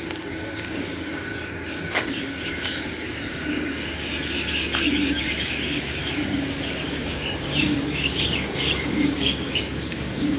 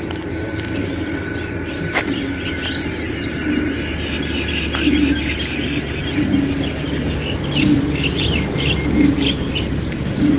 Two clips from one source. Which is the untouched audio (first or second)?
second